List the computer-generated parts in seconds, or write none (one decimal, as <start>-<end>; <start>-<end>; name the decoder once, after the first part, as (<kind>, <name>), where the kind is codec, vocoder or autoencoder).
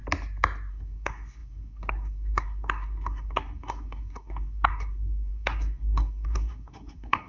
0.7-7.3 (codec, SNAC)